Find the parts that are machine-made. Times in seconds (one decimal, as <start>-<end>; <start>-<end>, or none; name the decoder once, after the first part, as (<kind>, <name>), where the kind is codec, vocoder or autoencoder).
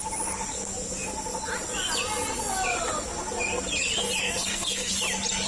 4.2-4.9 (codec, SNAC)